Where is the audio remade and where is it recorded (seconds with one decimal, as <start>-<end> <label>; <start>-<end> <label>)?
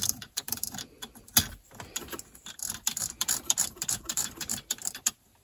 0.0-0.6 remade; 0.6-2.8 recorded; 2.8-5.4 remade